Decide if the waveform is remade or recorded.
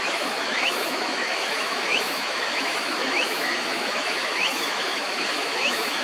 remade